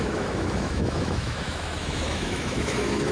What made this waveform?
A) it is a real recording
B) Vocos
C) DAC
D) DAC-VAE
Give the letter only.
D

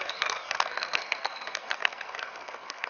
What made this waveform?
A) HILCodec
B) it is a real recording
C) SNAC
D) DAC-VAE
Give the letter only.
C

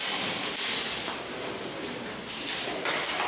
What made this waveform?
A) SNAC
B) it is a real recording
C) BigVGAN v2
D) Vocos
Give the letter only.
B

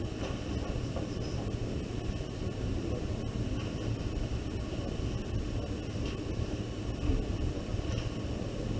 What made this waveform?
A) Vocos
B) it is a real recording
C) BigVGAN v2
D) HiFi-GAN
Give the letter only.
B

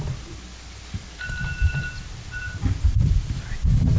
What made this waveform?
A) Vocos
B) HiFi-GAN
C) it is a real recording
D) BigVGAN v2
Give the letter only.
D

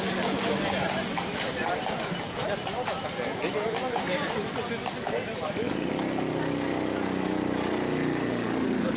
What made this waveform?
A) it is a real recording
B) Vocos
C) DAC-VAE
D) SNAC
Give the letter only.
A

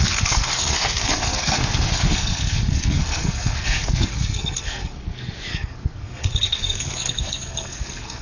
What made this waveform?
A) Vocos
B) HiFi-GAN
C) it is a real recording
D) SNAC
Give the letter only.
D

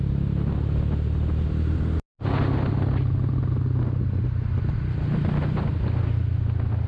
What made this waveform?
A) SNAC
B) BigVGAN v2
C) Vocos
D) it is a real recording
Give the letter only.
D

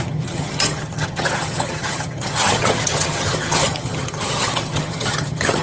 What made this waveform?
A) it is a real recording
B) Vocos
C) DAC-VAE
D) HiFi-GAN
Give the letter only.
D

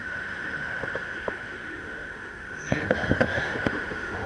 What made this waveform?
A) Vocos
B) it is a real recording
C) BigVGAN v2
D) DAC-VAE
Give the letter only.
D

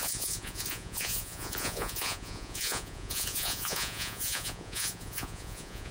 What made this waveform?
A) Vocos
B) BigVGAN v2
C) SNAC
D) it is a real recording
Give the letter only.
A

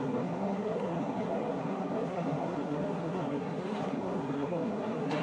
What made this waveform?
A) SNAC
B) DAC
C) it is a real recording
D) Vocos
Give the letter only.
A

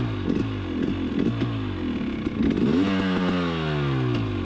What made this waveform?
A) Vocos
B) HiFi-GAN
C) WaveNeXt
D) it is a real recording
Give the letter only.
D